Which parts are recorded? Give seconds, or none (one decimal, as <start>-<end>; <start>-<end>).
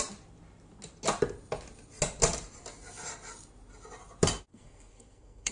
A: 0.0-4.5